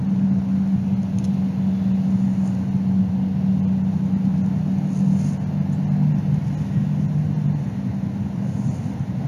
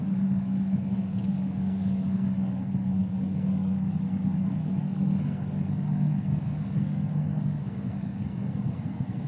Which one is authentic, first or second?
first